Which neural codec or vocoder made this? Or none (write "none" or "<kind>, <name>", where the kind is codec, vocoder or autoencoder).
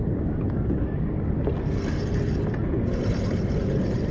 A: none